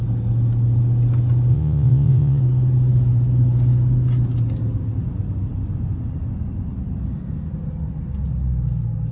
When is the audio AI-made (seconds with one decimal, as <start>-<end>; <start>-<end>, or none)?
1.5-2.4